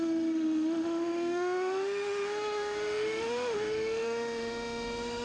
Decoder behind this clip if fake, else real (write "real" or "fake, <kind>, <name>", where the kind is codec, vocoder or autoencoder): fake, autoencoder, DAC-VAE